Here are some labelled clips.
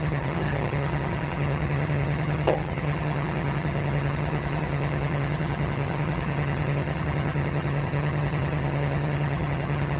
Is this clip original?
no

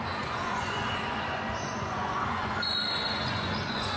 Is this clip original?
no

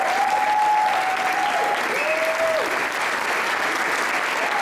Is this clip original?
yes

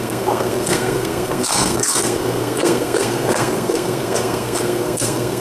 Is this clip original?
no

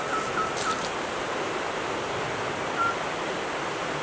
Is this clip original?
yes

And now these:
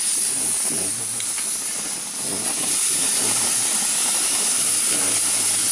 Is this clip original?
yes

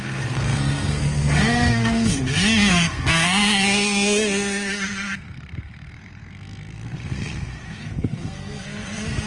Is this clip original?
no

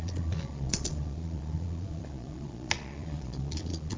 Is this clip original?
no